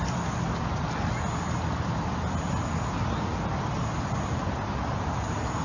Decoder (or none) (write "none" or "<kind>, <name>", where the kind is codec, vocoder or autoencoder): none